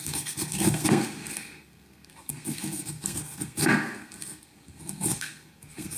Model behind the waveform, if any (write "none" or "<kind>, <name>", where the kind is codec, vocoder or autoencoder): codec, SNAC